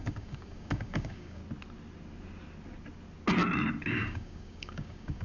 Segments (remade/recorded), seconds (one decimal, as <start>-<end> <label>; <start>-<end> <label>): 0.0-1.4 remade; 1.4-3.8 recorded; 3.8-5.2 remade